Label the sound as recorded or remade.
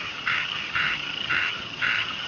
remade